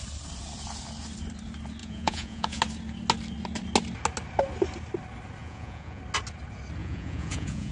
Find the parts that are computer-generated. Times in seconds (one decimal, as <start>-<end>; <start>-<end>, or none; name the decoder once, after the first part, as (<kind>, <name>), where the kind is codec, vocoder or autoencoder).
1.8-2.6 (vocoder, Vocos); 5.4-6.0; 6.8-7.7